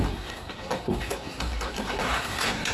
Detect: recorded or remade remade